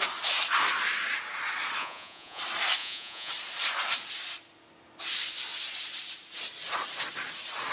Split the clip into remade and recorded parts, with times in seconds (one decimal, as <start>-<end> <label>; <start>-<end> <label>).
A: 0.0-1.8 recorded; 1.8-2.4 remade; 2.4-2.8 recorded; 2.8-3.3 remade; 3.3-7.7 recorded